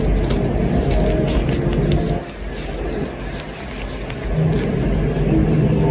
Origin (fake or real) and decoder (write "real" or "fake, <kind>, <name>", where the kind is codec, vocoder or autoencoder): real